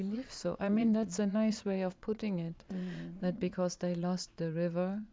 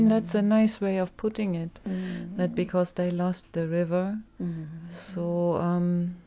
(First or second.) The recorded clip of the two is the second